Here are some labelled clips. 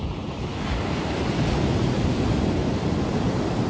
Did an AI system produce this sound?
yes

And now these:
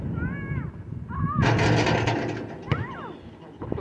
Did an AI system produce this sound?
no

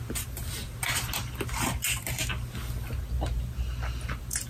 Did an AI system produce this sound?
no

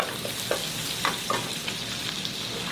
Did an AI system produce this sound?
no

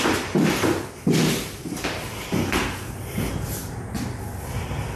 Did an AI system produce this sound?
yes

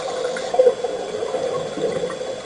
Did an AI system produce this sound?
no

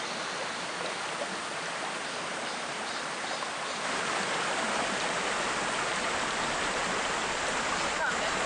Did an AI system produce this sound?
no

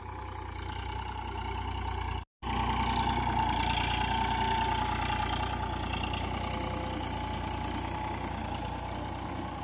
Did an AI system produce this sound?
no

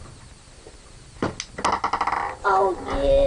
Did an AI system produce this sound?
no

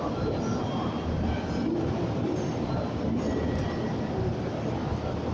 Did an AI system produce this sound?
no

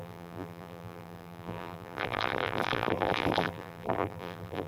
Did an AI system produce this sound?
yes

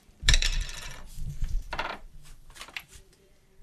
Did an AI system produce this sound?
yes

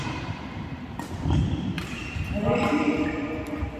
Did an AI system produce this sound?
yes